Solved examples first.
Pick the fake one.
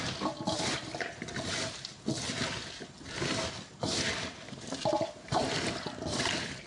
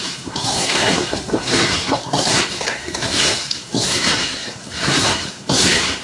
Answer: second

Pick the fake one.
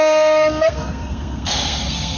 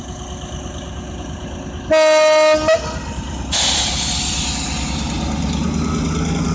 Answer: first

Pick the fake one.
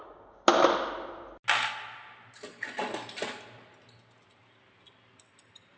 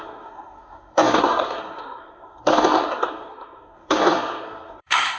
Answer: second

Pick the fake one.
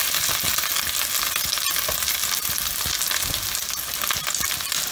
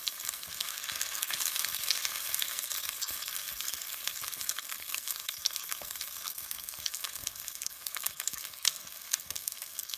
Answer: second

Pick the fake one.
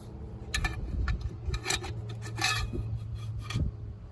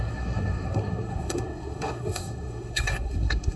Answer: second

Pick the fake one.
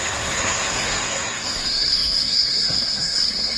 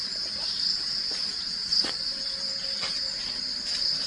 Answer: first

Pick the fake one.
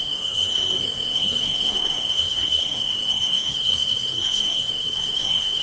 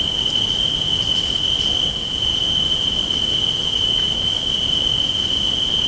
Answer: first